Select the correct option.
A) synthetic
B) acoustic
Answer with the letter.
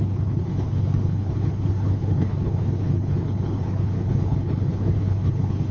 A